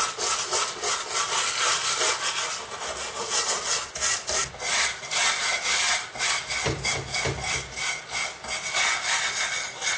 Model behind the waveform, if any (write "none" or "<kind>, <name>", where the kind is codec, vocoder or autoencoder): none